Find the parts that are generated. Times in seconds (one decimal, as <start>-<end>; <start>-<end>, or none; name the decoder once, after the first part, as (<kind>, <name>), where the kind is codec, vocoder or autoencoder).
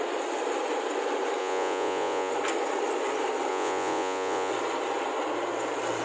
1.4-2.3 (vocoder, Vocos); 3.5-4.5